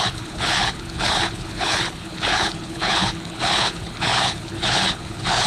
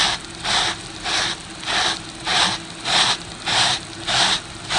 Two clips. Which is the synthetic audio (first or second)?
first